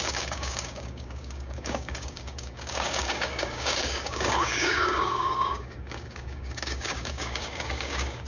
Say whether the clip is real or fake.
fake